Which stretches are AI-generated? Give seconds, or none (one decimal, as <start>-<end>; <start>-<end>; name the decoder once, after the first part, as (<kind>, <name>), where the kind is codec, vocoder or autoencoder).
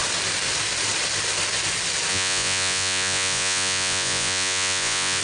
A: 2.1-5.2 (vocoder, Vocos)